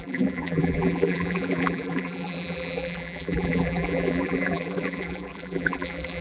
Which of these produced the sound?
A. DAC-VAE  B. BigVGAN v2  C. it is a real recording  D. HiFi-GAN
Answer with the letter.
B